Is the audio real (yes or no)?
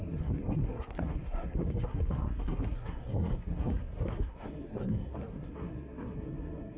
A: no